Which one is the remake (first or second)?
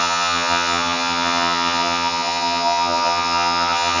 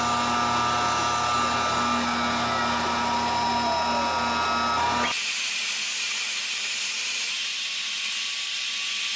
first